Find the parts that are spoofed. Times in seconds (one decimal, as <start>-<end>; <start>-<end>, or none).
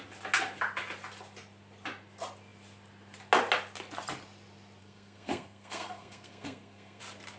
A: 4.8-7.0